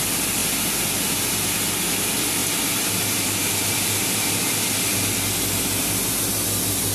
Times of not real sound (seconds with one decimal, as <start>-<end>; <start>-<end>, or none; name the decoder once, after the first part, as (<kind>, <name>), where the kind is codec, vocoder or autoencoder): none

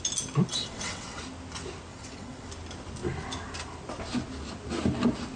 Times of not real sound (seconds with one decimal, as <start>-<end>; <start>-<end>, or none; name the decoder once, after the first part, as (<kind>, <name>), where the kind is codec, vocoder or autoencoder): 0.5-1.2 (vocoder, WaveNeXt); 1.9-2.5